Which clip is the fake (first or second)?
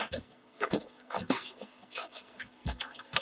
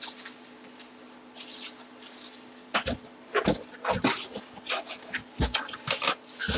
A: first